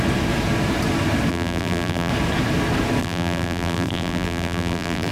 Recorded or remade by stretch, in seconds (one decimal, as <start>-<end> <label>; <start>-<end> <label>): 0.0-1.3 recorded; 1.3-2.1 remade; 2.1-3.0 recorded; 3.0-5.1 remade